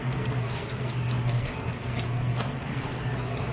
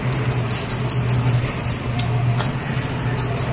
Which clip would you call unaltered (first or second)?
second